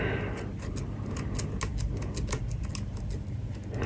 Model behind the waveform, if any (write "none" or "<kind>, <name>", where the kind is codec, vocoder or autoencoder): none